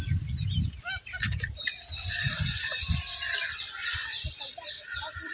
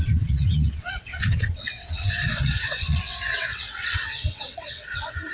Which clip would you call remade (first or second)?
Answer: second